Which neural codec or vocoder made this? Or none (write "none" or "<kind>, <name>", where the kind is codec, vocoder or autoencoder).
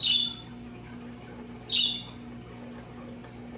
none